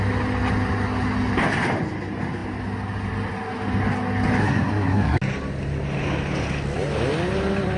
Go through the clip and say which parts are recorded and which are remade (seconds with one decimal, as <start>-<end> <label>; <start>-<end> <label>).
0.0-4.4 recorded; 4.4-5.2 remade; 5.2-7.8 recorded